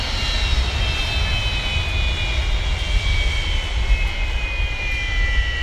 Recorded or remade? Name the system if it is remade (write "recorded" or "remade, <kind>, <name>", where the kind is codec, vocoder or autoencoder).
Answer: recorded